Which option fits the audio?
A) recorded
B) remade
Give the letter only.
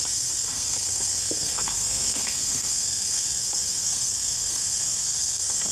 B